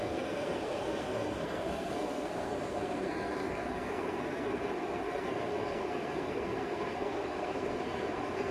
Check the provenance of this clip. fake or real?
fake